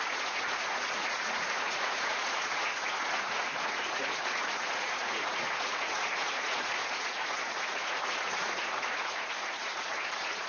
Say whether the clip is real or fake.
fake